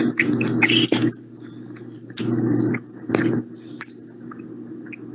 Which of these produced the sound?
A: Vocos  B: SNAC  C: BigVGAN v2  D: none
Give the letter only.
D